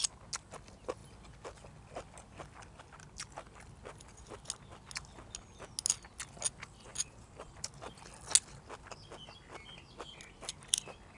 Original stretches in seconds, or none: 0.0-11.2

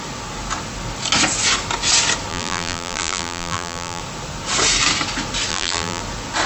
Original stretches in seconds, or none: 0.0-2.3; 4.0-5.5; 6.0-6.5

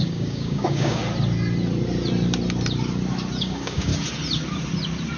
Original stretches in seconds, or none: 1.0-3.4; 3.9-5.2

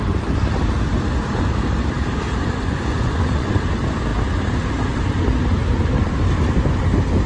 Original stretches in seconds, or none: 0.0-2.4; 3.5-7.3

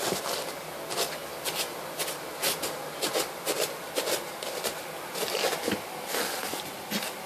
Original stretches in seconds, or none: 0.0-1.3; 2.0-7.3